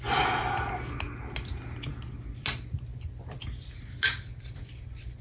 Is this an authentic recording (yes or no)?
yes